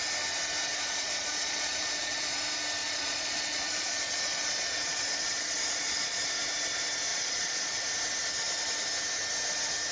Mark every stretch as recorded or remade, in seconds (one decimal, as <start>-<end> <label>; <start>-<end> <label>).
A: 0.0-0.7 recorded; 0.7-2.4 remade; 2.4-2.8 recorded; 2.8-6.3 remade; 6.3-7.1 recorded; 7.1-7.8 remade; 7.8-9.9 recorded